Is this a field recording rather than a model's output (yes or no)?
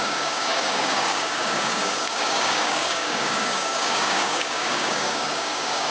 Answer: no